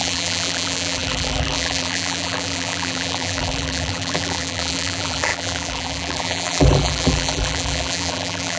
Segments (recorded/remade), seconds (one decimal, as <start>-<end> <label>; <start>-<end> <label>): 0.0-8.6 remade